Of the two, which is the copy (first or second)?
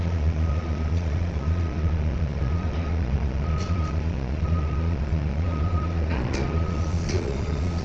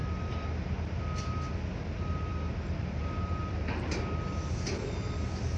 first